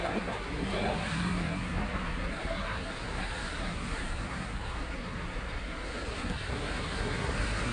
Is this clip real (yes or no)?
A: no